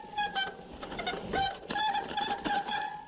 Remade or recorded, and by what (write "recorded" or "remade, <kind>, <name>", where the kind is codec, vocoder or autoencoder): recorded